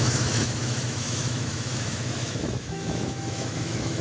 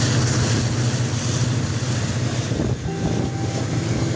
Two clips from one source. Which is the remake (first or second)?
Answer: first